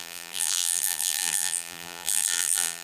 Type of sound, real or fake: fake